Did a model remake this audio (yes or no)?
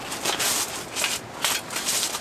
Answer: no